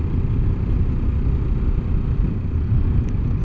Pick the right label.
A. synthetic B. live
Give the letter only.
B